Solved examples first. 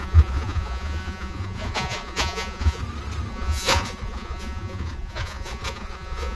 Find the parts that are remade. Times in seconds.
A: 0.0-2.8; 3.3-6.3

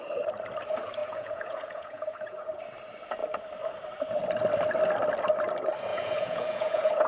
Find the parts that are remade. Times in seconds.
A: 1.0-2.6; 5.9-7.1

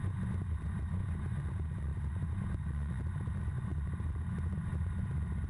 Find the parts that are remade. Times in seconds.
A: 0.0-5.5

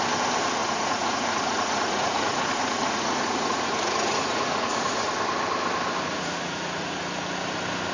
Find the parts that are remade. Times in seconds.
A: 0.6-5.1; 6.1-7.0